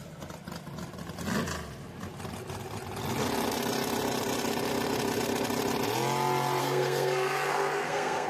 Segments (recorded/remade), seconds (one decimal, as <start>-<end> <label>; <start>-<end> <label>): 0.0-6.6 recorded; 6.6-8.3 remade